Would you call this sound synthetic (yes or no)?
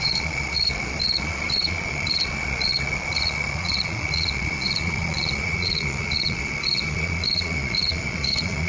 yes